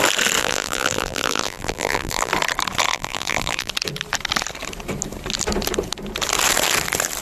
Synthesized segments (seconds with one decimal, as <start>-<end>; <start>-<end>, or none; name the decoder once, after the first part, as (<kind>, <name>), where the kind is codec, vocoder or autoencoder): 0.4-2.3 (vocoder, BigVGAN v2); 2.9-3.7